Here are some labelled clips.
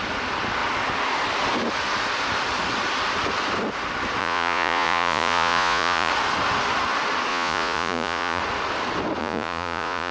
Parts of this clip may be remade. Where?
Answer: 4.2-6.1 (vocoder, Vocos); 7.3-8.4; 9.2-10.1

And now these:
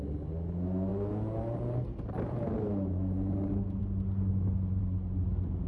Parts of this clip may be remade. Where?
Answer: none

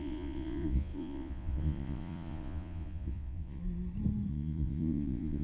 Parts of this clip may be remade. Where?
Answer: 0.0-3.6 (vocoder, Vocos); 4.3-5.4

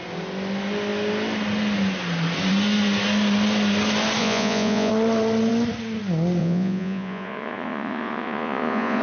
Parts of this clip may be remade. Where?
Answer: 4.2-4.9 (vocoder, Vocos); 6.4-9.0

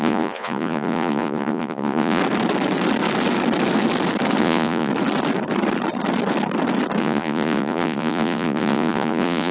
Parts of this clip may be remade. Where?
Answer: 0.0-2.2 (vocoder, Vocos); 4.4-4.9; 7.0-9.5